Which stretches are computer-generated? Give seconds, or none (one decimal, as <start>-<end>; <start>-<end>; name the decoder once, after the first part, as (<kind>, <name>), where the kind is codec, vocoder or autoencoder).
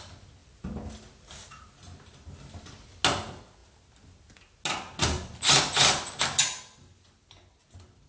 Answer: none